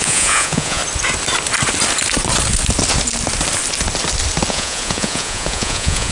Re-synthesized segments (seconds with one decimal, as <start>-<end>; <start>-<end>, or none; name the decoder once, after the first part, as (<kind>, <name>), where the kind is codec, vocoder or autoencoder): 0.0-0.8 (vocoder, Vocos); 4.5-6.1